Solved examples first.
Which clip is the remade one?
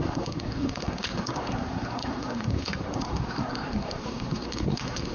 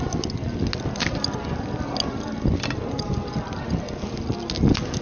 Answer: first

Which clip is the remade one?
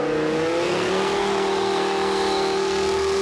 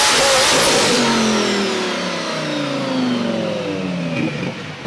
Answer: first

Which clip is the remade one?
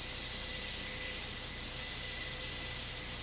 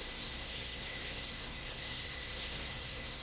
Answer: second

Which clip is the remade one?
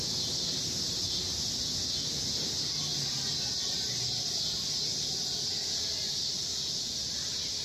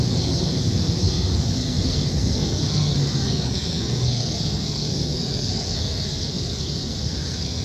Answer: second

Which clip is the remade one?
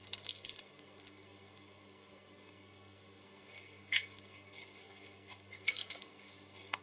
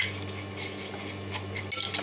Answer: first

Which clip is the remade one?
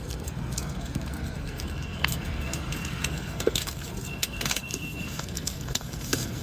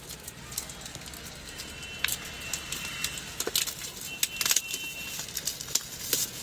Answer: first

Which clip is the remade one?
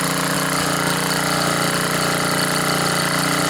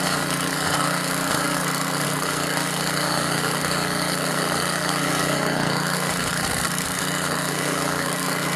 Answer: second